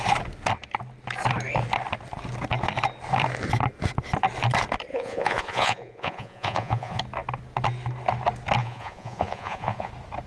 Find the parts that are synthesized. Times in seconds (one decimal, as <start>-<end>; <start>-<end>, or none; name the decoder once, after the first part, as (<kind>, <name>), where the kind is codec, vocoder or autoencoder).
4.9-7.0 (vocoder, Vocos); 8.6-9.9